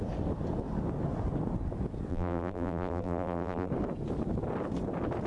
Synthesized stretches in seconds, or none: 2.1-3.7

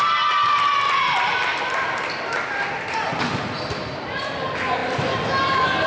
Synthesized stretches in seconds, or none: none

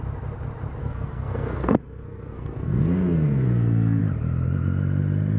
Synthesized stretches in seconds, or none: 0.8-4.0

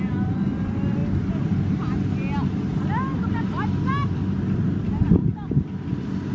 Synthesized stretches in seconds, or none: none

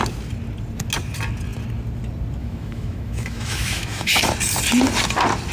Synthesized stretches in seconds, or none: 2.4-4.1